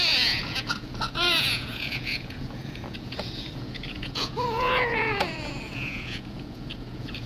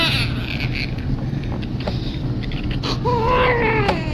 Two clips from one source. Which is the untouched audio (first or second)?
second